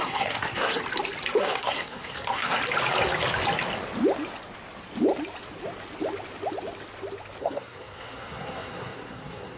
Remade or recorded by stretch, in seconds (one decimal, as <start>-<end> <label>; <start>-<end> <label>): 0.0-0.8 remade; 0.8-1.4 recorded; 1.4-2.6 remade; 2.6-7.4 recorded; 7.4-9.6 remade